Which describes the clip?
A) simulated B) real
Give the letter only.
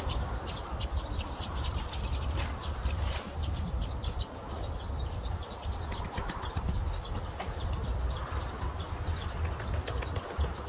B